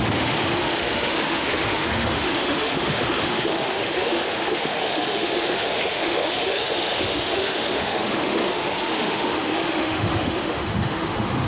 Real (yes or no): no